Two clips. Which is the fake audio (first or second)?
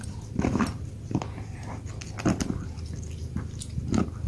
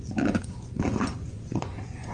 second